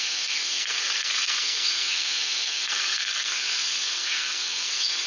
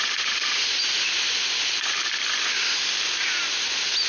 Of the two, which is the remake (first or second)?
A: first